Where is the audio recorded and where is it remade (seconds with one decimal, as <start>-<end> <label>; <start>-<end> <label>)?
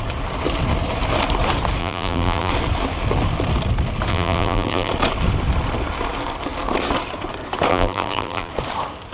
0.0-1.8 recorded; 1.8-2.5 remade; 2.5-4.1 recorded; 4.1-4.9 remade; 4.9-7.7 recorded; 7.7-8.5 remade; 8.5-9.1 recorded